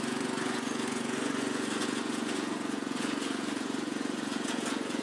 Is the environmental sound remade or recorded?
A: remade